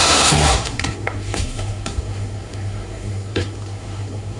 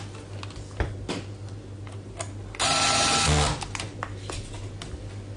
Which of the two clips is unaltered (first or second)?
second